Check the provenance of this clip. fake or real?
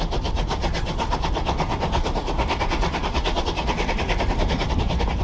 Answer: real